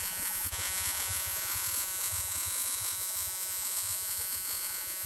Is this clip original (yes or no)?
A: no